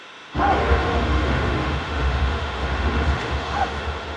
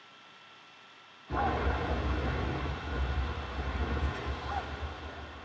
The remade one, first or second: first